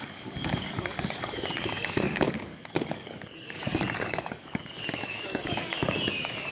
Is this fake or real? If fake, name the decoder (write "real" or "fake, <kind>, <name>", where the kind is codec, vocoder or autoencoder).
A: fake, codec, DAC